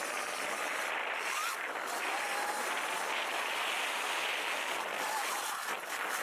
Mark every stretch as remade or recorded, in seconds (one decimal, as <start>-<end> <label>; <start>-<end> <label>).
0.0-6.2 recorded